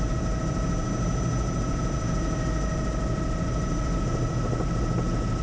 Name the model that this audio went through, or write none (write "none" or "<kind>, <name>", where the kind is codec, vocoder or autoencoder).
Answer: none